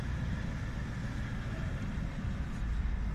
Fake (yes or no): no